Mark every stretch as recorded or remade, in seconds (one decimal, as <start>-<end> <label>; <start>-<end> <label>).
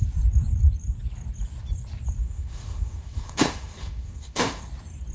0.0-2.2 recorded; 2.2-4.6 remade; 4.6-5.1 recorded